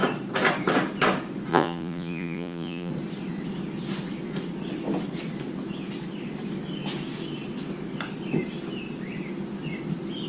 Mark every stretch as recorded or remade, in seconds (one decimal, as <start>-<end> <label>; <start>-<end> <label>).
0.0-1.5 recorded; 1.5-2.9 remade; 2.9-10.3 recorded